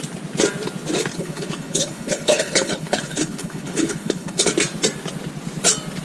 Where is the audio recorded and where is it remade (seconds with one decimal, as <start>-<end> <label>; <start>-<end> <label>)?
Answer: 0.0-1.1 recorded; 1.1-4.5 remade; 4.5-6.0 recorded